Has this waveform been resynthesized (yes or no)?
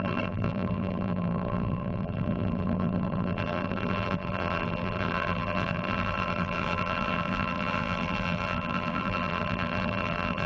yes